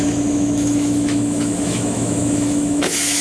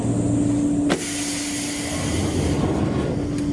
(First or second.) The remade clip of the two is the first